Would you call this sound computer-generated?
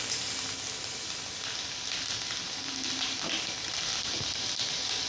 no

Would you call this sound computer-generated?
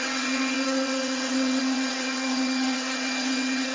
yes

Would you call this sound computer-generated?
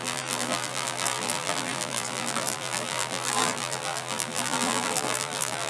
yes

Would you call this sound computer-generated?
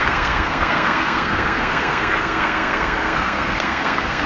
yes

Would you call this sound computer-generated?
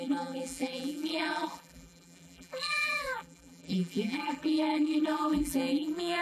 yes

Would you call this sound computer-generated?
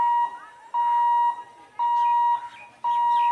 no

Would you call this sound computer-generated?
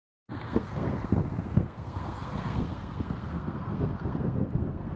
yes